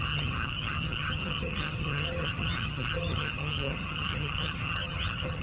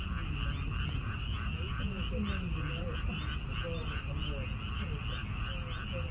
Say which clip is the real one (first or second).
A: second